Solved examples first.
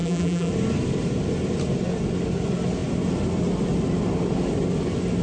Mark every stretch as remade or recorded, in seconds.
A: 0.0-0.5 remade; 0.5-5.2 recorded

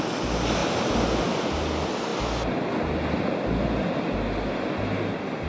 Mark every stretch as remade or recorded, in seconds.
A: 0.0-0.6 recorded; 0.6-1.2 remade; 1.2-5.5 recorded

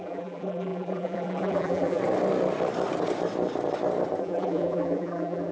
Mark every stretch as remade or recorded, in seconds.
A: 0.0-2.0 remade; 2.0-4.2 recorded; 4.2-5.5 remade

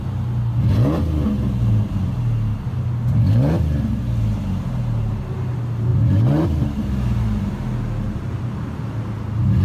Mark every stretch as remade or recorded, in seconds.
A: 0.0-5.9 recorded; 5.9-7.5 remade; 7.5-9.6 recorded

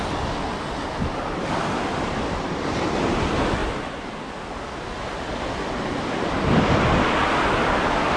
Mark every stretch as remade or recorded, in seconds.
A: 0.0-8.2 recorded